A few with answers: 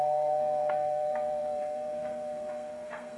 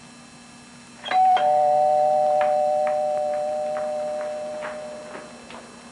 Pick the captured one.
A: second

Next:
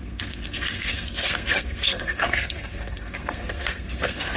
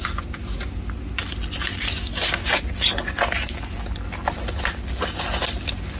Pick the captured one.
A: second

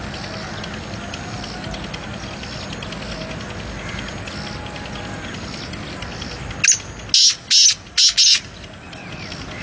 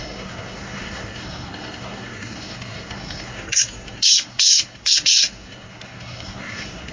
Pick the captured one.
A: first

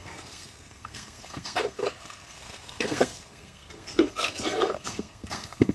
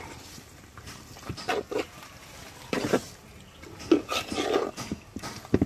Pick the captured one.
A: second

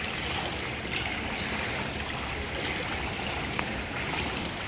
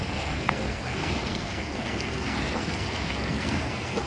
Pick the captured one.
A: first